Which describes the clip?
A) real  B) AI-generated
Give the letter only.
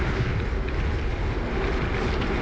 A